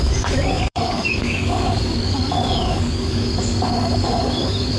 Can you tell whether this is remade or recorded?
remade